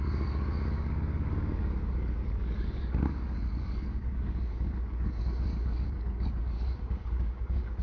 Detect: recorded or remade remade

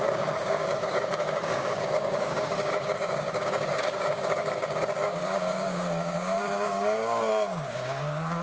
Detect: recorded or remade remade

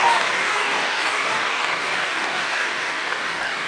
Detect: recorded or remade remade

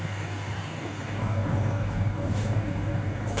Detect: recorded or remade remade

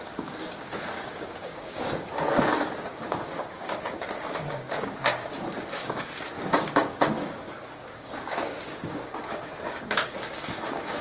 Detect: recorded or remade remade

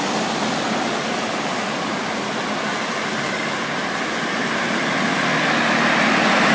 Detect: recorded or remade recorded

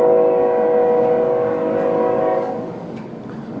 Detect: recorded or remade remade